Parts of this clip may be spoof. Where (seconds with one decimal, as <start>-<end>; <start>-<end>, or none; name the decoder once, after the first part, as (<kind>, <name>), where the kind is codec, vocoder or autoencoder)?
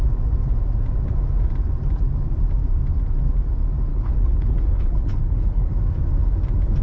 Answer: 3.9-5.7 (codec, HILCodec)